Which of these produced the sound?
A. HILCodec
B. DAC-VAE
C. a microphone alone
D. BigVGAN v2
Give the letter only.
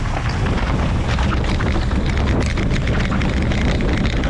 C